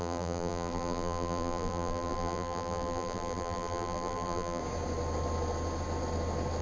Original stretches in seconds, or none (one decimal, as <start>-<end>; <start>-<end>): 4.6-6.6